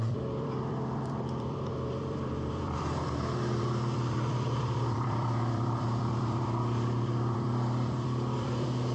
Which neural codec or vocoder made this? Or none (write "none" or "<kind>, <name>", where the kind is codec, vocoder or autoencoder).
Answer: vocoder, BigVGAN v2